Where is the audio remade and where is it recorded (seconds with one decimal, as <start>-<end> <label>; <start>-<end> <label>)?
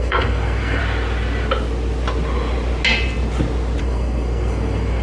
0.0-0.8 remade; 0.8-3.8 recorded; 3.8-5.0 remade